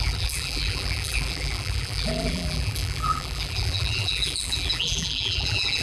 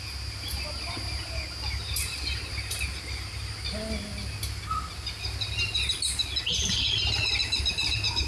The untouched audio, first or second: second